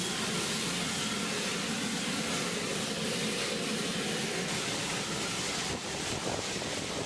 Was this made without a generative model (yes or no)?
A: yes